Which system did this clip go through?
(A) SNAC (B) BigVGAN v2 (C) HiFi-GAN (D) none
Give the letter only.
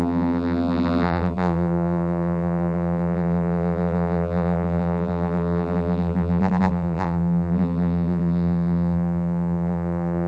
B